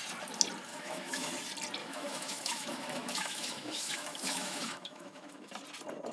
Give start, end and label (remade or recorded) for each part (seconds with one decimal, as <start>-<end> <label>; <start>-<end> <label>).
0.0-0.7 recorded; 0.7-1.3 remade; 1.3-1.8 recorded; 1.8-5.5 remade; 5.5-6.1 recorded